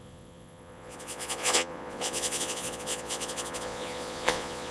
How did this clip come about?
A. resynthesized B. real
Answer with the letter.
A